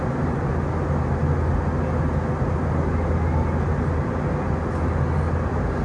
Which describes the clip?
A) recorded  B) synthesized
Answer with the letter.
A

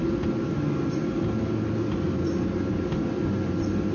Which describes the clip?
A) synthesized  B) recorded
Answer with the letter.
B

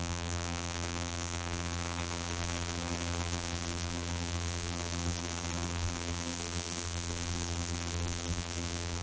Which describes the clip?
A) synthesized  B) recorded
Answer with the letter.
A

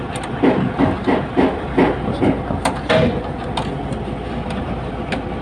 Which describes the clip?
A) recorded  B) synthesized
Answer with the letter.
A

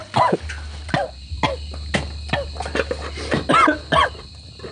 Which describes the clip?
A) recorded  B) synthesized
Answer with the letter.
A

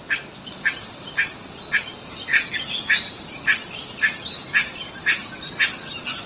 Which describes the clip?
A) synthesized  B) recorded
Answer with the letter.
B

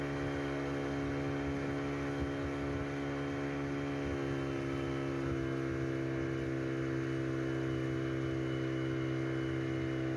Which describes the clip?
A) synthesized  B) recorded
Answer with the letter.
B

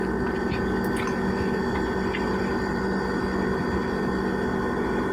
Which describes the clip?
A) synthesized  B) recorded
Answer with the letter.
B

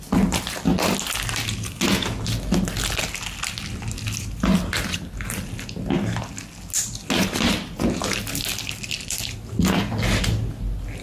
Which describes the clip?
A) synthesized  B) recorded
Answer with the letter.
B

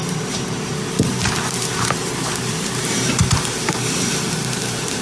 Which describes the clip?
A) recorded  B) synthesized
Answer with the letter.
B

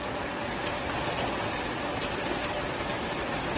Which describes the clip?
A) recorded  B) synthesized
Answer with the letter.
A